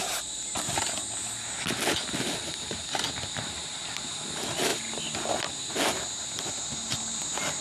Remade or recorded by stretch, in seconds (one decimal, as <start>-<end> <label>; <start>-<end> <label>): 0.0-7.6 recorded